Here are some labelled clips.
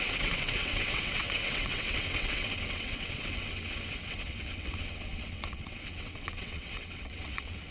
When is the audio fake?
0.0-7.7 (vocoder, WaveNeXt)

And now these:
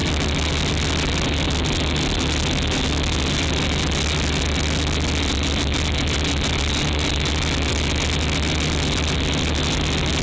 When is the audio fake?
none

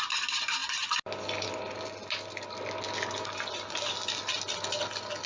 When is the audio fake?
none

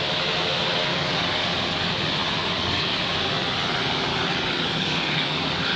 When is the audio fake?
0.9-1.5 (codec, DAC); 2.4-3.0; 4.1-5.8

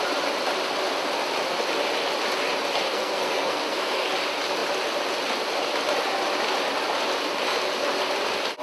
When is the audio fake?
2.9-4.1 (codec, SNAC)

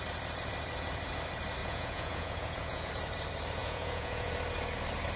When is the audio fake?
1.6-2.9 (vocoder, Vocos); 3.6-4.3

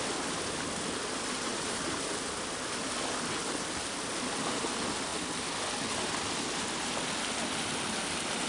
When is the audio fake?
none

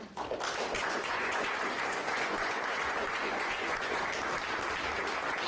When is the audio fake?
0.8-4.1 (vocoder, Vocos)